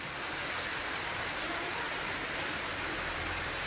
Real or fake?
fake